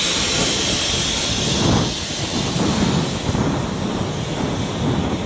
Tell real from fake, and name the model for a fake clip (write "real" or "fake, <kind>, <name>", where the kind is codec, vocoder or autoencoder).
real